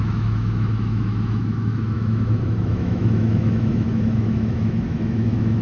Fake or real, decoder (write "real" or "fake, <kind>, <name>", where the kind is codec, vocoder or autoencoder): fake, autoencoder, DAC-VAE